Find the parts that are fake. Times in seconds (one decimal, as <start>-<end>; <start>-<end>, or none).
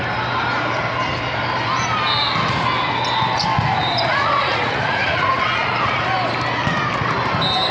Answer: 4.1-6.0